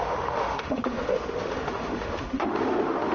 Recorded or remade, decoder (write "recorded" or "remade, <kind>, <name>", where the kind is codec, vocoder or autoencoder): remade, autoencoder, DAC-VAE